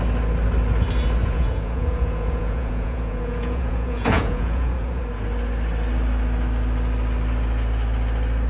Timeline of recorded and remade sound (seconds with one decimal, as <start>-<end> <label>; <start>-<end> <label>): 0.0-1.2 recorded; 1.2-5.0 remade; 5.0-8.5 recorded